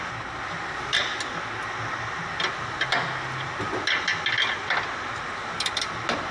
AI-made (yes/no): no